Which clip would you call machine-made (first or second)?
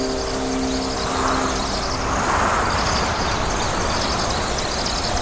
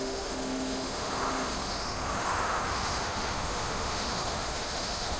second